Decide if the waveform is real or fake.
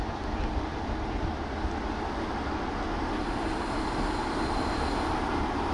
real